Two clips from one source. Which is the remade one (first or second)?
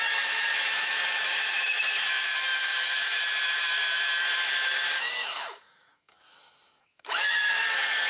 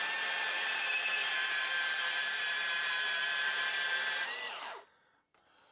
first